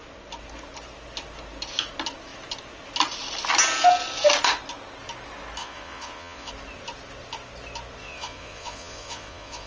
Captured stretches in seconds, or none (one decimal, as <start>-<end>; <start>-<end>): 0.0-5.6; 6.5-8.0

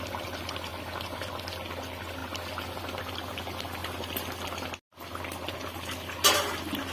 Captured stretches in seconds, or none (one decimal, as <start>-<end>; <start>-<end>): 0.0-6.9

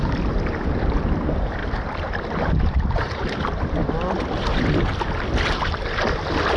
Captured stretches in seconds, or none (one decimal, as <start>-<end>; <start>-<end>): 0.0-1.6; 5.1-6.6